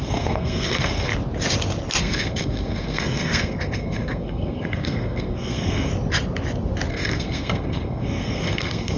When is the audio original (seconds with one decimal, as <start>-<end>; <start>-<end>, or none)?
1.1-2.0; 5.9-6.9